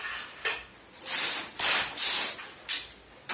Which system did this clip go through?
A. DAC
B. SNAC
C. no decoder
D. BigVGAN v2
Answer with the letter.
C